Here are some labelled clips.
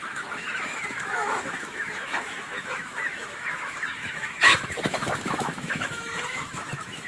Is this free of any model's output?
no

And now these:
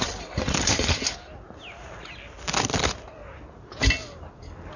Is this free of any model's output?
yes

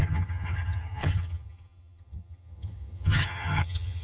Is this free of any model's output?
no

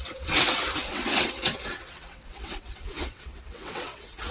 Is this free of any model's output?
no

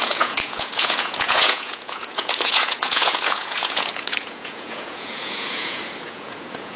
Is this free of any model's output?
no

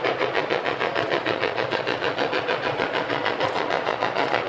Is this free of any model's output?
no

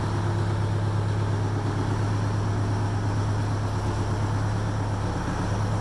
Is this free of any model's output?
yes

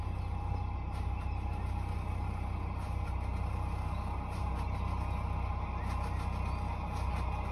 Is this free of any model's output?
yes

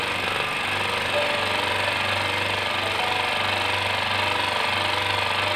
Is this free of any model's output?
yes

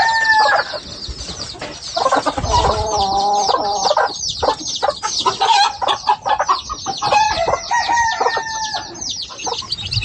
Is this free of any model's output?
yes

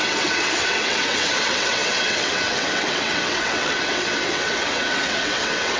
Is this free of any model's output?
no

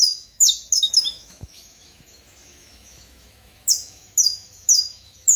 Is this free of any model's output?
no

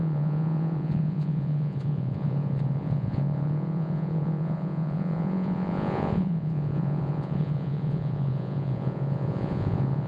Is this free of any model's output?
no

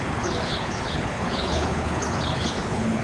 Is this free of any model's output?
no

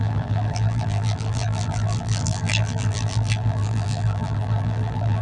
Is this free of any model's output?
no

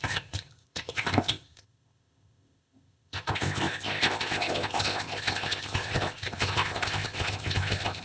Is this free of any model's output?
no